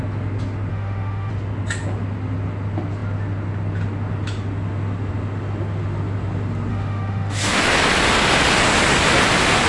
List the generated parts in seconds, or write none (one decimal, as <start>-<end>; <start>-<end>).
0.7-1.3; 6.7-7.6